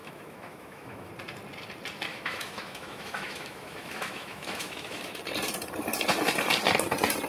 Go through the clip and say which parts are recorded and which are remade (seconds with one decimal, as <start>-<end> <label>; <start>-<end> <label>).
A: 0.0-1.1 remade; 1.1-2.1 recorded; 2.1-5.2 remade; 5.2-7.3 recorded